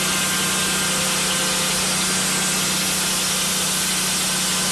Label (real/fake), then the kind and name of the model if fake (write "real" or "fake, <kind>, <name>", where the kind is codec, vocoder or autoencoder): real